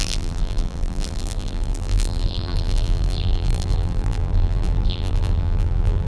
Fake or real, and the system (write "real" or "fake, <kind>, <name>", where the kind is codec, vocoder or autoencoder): fake, vocoder, BigVGAN v2